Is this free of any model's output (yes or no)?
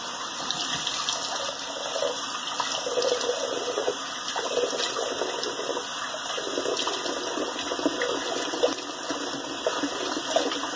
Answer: yes